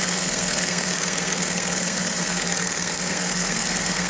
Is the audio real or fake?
fake